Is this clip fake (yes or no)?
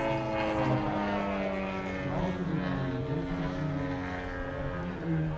no